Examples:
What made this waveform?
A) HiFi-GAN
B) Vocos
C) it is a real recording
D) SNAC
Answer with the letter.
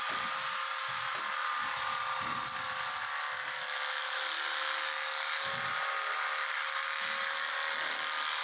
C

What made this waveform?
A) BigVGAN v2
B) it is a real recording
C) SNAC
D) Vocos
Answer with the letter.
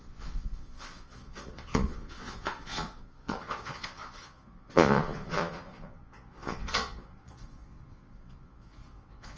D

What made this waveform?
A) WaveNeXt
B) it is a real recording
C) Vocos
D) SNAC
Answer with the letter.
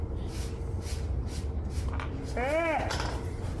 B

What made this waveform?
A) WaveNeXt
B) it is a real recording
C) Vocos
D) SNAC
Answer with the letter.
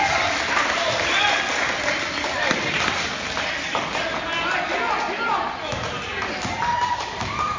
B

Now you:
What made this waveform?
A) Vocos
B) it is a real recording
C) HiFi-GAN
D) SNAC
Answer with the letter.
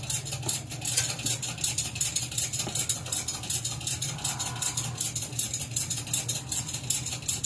B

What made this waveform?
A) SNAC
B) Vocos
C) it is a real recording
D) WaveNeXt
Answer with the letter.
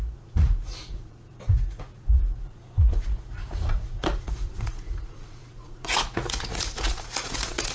B